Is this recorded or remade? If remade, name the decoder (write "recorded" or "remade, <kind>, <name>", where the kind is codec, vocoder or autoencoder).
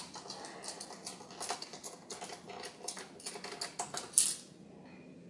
recorded